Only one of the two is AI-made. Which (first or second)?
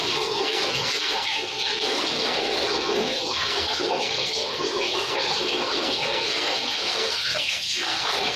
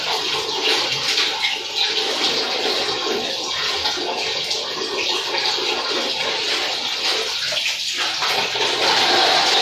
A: first